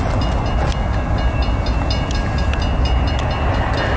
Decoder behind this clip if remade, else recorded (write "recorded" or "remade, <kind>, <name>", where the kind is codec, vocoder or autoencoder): recorded